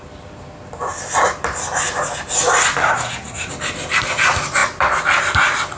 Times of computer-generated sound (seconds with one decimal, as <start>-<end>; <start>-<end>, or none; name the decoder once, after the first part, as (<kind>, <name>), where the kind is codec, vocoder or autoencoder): 2.8-3.5 (codec, SNAC)

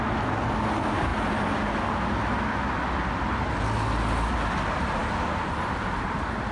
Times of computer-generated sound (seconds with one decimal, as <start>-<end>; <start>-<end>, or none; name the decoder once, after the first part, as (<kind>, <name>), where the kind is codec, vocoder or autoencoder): none

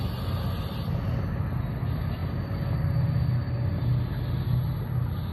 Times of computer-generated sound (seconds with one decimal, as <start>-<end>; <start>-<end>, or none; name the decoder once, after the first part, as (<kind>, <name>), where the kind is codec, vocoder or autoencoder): none